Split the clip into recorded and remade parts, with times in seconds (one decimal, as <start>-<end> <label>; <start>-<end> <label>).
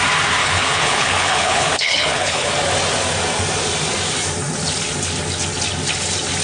0.0-0.4 recorded; 0.4-2.5 remade; 2.5-6.4 recorded